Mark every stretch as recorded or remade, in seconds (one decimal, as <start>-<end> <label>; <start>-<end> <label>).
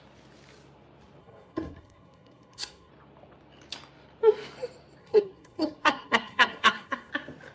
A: 0.0-1.2 recorded; 1.2-2.9 remade; 2.9-5.0 recorded; 5.0-7.1 remade; 7.1-7.5 recorded